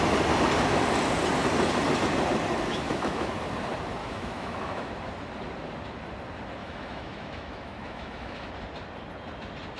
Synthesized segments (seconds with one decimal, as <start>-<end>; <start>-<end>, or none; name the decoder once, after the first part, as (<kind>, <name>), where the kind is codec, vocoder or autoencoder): 2.7-3.3 (autoencoder, DAC-VAE); 4.0-4.9; 6.6-8.5